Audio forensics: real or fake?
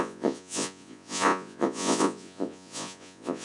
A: fake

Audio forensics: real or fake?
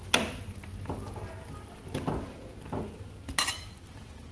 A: real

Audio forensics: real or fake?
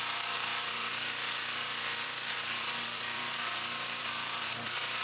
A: fake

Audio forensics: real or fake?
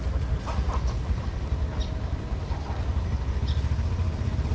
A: real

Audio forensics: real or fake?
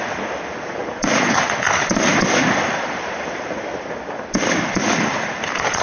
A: real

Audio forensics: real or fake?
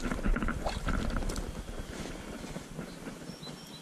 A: real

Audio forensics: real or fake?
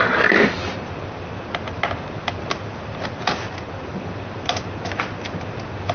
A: real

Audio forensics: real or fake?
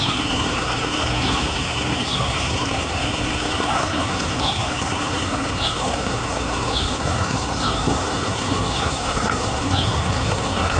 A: fake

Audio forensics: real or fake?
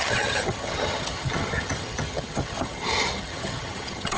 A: fake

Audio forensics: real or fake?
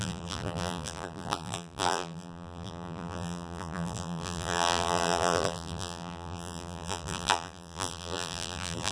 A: fake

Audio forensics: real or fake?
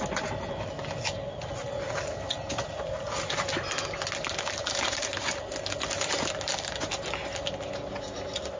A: real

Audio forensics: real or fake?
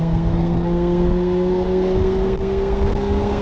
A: fake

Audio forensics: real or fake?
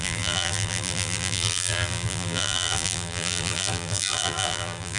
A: fake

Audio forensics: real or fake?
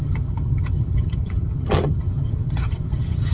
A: fake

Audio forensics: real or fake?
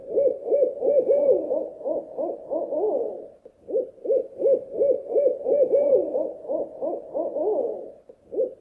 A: real